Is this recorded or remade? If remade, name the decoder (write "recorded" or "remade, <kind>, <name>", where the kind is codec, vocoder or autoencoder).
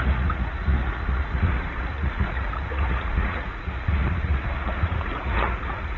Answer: remade, vocoder, Vocos